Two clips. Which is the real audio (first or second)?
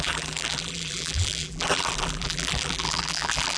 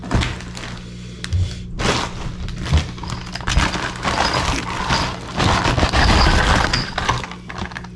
second